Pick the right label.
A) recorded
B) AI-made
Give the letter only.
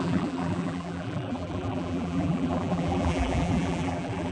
B